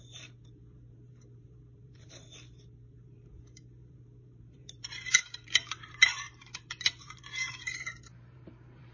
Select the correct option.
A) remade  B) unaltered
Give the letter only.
A